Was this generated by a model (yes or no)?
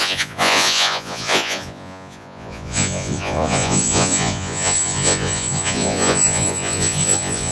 yes